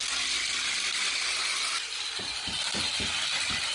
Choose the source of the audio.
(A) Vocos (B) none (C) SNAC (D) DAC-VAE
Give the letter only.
B